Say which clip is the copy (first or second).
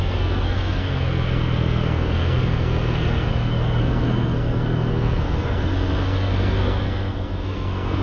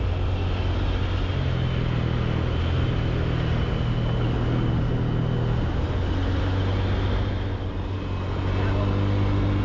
first